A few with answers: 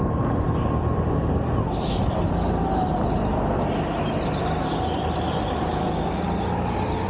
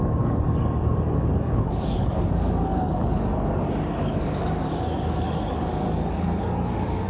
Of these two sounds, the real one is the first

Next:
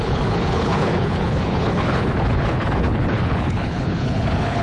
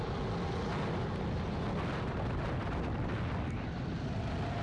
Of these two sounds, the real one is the second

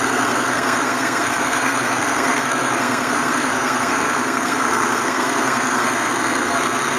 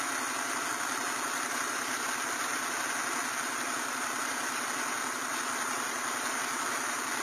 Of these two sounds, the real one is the second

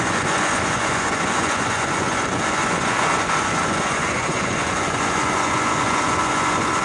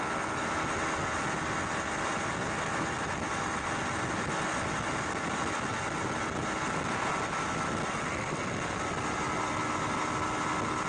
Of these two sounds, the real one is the second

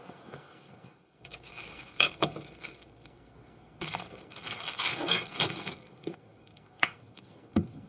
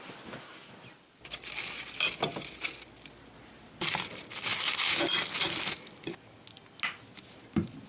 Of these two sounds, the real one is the second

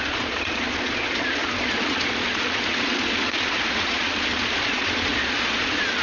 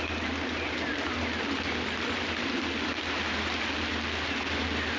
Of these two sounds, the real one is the second